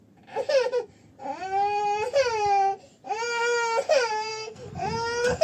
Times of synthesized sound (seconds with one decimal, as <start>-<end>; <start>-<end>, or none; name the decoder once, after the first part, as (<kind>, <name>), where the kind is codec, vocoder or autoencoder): 4.3-5.4 (codec, SNAC)